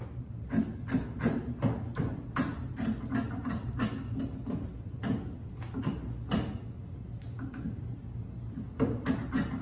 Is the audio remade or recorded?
recorded